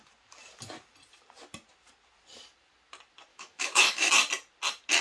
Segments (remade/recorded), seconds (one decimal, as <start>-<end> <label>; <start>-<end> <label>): 0.0-3.3 recorded; 3.3-4.1 remade; 4.1-5.0 recorded